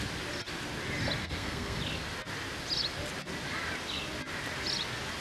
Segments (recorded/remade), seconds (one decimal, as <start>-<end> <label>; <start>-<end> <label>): 0.0-1.2 recorded; 1.2-1.8 remade; 1.8-5.2 recorded